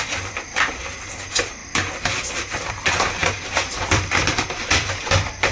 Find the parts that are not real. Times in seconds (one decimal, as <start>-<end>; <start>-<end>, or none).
0.0-5.5